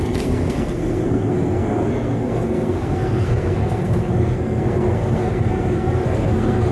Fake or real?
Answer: fake